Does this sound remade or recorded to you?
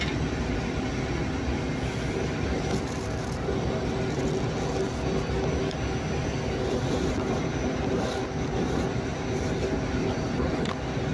recorded